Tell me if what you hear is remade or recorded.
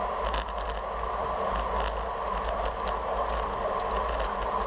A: recorded